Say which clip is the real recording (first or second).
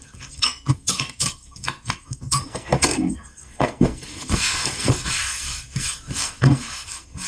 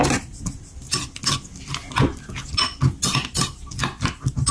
second